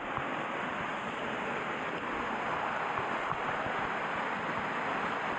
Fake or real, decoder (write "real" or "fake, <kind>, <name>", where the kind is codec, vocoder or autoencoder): real